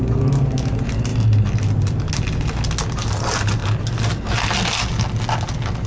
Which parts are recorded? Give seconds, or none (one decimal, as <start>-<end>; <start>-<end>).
0.0-5.9